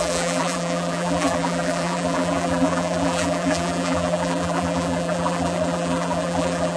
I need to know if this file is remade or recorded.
remade